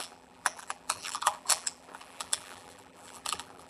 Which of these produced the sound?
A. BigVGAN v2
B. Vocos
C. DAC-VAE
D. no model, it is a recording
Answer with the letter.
A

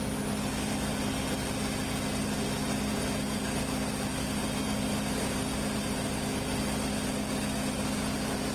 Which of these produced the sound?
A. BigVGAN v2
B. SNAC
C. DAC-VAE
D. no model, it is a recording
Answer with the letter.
D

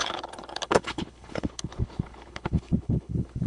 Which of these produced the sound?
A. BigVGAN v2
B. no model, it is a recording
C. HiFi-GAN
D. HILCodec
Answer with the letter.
D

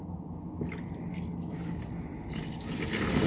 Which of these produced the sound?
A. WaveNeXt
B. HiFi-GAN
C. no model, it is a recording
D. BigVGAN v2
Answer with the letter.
C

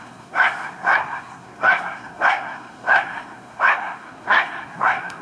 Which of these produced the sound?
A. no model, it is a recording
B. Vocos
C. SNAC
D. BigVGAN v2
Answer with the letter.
C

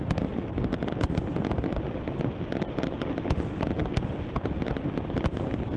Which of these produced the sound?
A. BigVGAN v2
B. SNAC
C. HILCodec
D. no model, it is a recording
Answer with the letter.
D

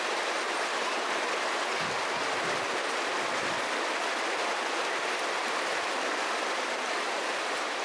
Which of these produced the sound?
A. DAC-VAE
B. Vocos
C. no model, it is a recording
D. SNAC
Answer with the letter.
C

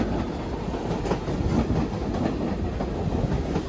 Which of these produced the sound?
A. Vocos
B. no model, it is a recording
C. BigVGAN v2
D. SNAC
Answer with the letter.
B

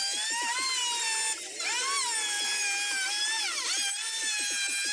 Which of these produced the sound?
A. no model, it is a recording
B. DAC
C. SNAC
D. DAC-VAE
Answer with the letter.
A